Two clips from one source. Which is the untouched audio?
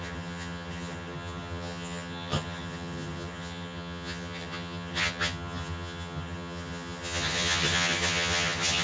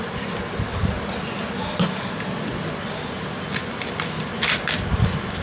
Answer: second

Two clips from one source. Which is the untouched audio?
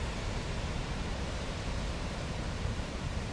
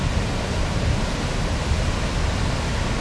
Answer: second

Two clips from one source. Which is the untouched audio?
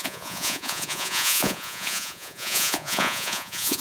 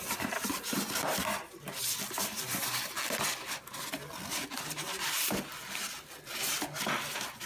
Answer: second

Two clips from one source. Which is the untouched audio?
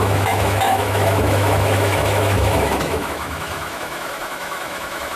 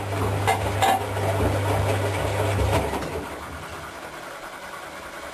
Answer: second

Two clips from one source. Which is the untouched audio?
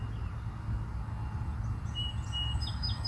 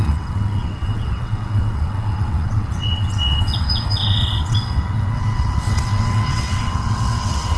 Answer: first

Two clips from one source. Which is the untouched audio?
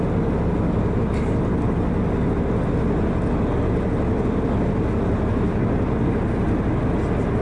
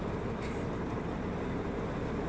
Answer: first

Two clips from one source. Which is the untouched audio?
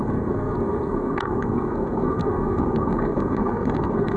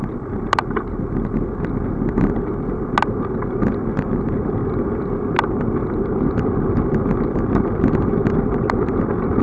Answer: second